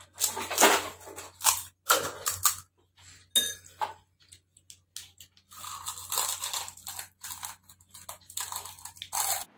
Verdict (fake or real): real